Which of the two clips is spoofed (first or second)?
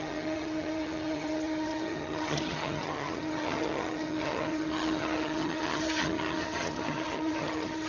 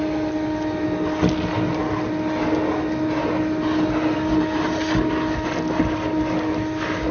first